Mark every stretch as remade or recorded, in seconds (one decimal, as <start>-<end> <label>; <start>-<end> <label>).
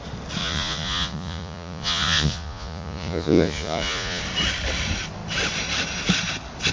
0.0-0.4 recorded; 0.4-4.2 remade; 4.2-6.7 recorded